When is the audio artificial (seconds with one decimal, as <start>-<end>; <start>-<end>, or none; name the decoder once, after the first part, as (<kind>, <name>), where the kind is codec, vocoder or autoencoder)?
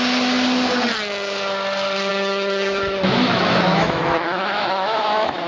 2.1-5.5 (autoencoder, DAC-VAE)